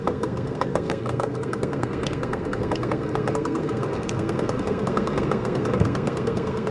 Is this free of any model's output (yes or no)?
no